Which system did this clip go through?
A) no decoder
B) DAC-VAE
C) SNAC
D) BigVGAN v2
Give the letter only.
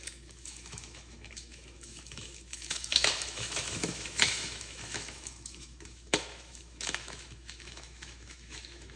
B